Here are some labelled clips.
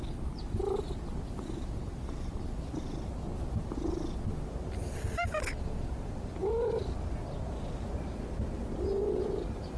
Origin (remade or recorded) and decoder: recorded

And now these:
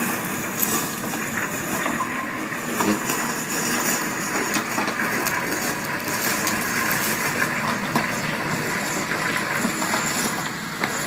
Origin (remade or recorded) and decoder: recorded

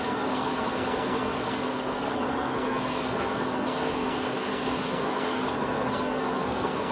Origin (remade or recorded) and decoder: remade, codec, SNAC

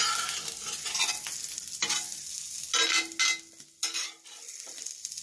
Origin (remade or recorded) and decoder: recorded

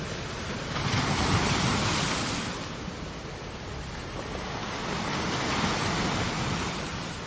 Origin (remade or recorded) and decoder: recorded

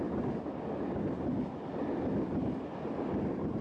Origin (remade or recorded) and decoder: recorded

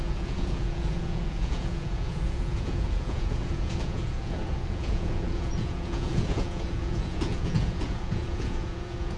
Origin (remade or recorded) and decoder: remade, vocoder, Vocos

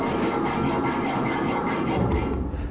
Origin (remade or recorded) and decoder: recorded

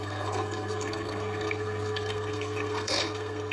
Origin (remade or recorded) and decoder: remade, codec, SNAC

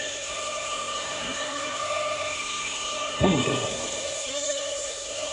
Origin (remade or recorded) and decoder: remade, codec, SNAC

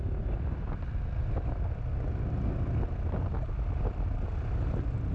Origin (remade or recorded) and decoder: recorded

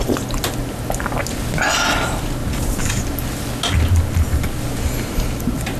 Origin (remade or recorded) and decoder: recorded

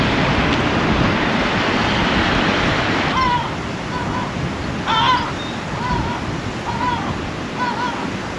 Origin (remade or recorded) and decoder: recorded